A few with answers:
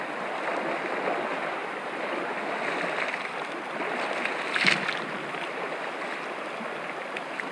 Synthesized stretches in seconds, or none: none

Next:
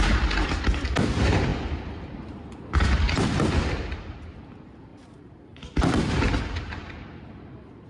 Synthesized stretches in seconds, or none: none

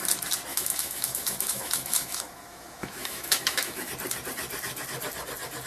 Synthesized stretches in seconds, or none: 0.5-3.9

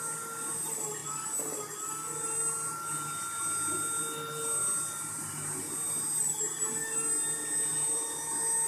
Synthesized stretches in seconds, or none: none

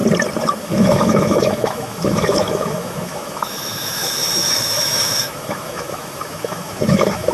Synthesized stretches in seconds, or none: 0.6-7.3

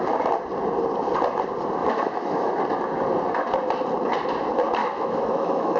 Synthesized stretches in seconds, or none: 1.8-2.5; 4.8-5.8